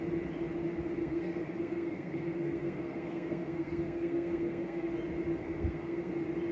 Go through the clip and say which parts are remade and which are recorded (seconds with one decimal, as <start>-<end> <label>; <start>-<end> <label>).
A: 0.0-1.0 recorded; 1.0-4.9 remade; 4.9-5.4 recorded; 5.4-6.1 remade; 6.1-6.5 recorded